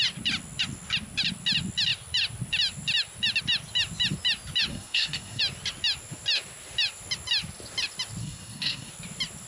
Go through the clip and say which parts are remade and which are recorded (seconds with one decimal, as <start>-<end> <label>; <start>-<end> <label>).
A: 0.0-4.7 recorded; 4.7-5.4 remade; 5.4-8.2 recorded; 8.2-8.9 remade; 8.9-9.5 recorded

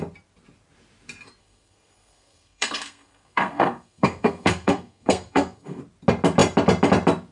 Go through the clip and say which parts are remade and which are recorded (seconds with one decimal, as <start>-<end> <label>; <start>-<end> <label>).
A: 0.0-1.4 recorded; 1.4-5.8 remade; 5.8-7.3 recorded

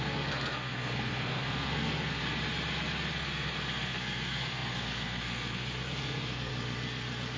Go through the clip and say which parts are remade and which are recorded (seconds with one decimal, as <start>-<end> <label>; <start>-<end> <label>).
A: 0.0-2.2 remade; 2.2-3.1 recorded; 3.1-6.5 remade; 6.5-7.4 recorded

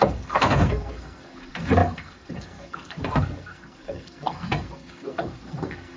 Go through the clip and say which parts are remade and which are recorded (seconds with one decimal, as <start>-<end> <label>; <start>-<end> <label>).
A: 0.0-6.0 remade

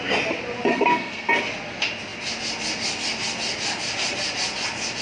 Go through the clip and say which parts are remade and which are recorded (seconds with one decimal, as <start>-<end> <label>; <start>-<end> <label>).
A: 0.0-0.7 recorded; 0.7-1.3 remade; 1.3-5.0 recorded

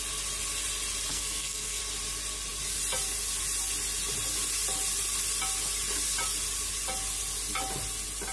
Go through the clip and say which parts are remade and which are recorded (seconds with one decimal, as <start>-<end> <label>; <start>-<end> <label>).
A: 0.0-1.1 recorded; 1.1-1.8 remade; 1.8-8.3 recorded